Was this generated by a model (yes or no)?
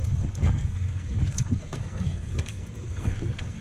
yes